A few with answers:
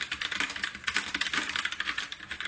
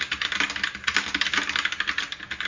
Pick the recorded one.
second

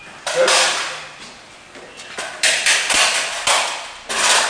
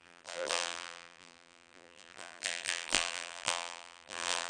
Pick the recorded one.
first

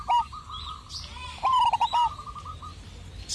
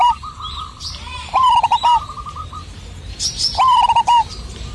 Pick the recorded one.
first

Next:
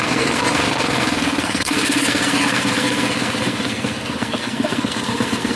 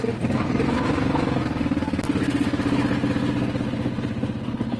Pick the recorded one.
second